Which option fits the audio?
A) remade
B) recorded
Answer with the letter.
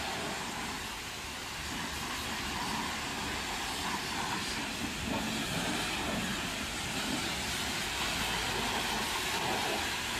B